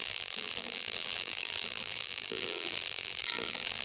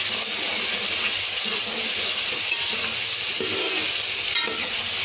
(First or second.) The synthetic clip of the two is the first